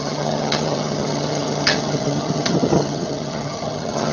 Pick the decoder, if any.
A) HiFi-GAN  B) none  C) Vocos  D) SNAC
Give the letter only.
A